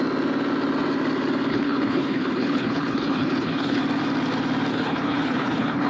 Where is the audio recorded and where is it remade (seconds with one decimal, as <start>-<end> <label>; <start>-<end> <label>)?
0.0-1.5 recorded; 1.5-3.8 remade; 3.8-4.7 recorded; 4.7-5.9 remade